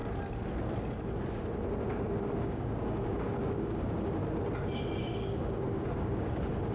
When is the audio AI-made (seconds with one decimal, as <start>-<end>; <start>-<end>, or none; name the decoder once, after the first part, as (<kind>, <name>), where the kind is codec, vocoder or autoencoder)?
2.4-4.2 (codec, DAC); 5.0-6.7